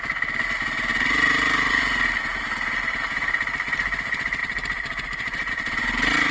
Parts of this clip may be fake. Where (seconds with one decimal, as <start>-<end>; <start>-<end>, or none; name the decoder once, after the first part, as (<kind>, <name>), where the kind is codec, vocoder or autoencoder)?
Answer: 0.9-1.7 (vocoder, BigVGAN v2); 4.4-5.5